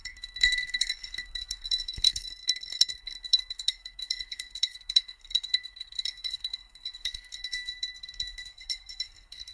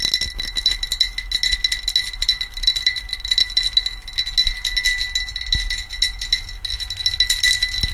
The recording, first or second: second